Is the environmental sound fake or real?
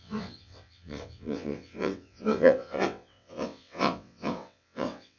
fake